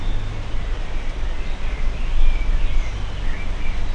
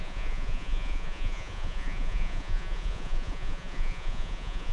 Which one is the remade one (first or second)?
second